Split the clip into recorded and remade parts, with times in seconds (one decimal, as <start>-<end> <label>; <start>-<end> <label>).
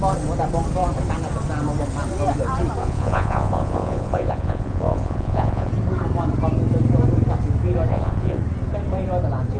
0.0-2.8 recorded; 2.8-5.7 remade; 5.7-7.9 recorded; 7.9-8.4 remade; 8.4-9.6 recorded